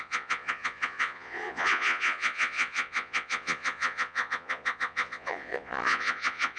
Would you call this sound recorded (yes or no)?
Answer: no